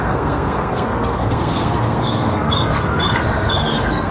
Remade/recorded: remade